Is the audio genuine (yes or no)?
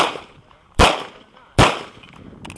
yes